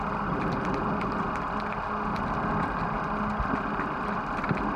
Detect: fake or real real